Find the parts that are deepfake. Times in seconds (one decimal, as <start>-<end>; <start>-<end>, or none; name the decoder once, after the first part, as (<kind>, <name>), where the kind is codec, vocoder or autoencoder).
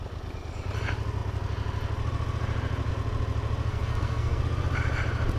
3.7-4.4 (codec, SNAC)